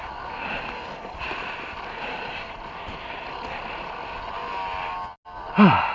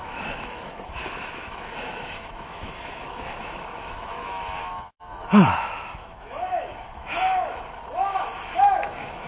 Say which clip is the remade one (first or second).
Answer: second